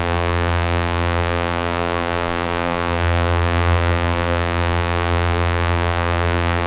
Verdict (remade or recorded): remade